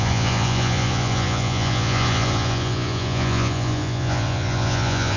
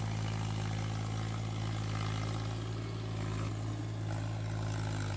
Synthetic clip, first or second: first